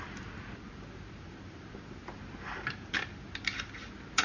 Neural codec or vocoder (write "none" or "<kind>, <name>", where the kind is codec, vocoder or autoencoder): none